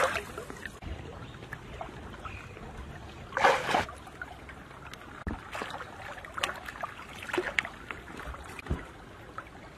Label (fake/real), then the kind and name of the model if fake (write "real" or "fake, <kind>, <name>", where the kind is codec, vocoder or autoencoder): real